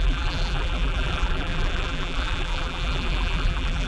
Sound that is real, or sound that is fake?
fake